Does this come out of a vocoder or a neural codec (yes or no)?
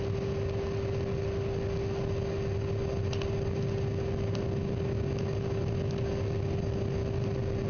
no